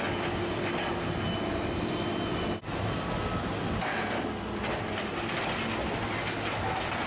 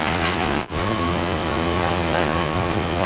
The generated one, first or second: second